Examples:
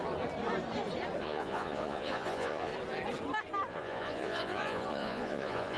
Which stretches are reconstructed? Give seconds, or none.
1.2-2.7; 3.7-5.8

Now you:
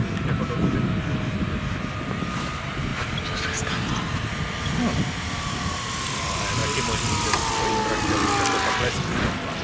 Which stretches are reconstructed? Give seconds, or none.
none

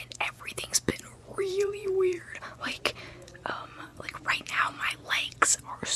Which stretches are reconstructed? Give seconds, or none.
0.0-6.0

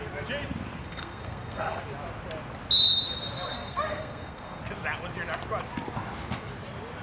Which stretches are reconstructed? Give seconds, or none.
0.8-1.8; 3.5-4.6